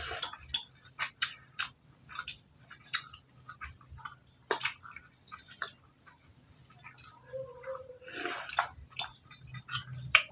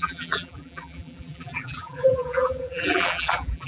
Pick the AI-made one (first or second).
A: second